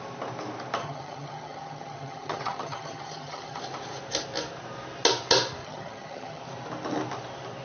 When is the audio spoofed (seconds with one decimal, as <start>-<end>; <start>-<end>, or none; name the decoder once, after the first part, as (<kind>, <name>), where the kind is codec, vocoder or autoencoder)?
0.8-3.6 (vocoder, HiFi-GAN); 5.6-6.4